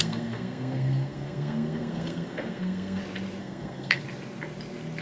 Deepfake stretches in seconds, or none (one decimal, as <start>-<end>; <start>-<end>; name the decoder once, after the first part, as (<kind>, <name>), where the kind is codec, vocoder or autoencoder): 0.0-3.0 (codec, SNAC); 3.4-4.0